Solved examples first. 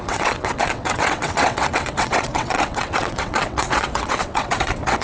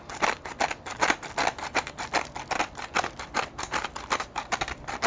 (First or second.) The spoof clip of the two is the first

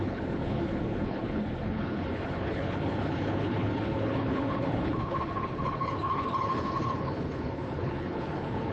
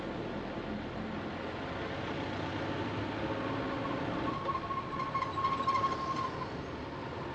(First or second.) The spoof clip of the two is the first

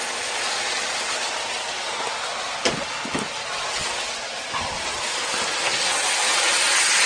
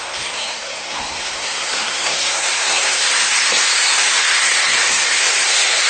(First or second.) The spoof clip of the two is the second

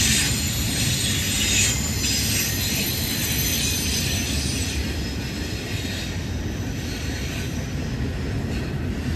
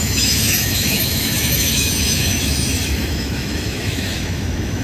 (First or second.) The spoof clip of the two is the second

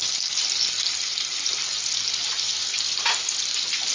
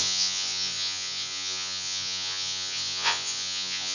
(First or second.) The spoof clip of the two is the second